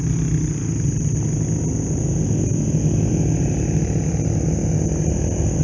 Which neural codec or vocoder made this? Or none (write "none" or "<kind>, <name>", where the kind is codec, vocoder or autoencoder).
none